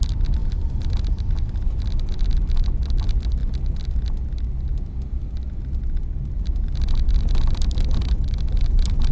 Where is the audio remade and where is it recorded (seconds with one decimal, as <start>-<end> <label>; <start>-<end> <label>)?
0.0-9.1 recorded